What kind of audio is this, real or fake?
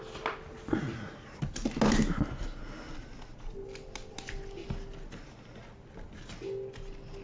real